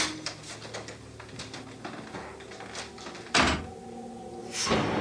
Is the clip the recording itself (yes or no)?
yes